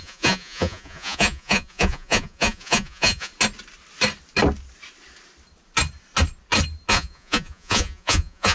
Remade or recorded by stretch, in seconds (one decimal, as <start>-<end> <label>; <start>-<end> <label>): 0.0-3.3 remade; 3.3-6.9 recorded; 6.9-8.5 remade